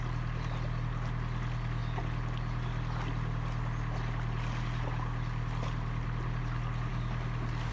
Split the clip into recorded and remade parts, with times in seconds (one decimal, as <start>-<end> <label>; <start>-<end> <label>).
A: 0.0-7.7 recorded